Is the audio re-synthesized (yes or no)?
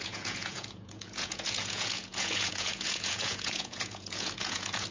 yes